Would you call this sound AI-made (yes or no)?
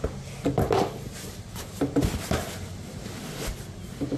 no